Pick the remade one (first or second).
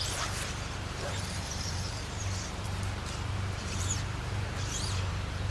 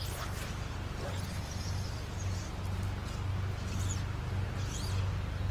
first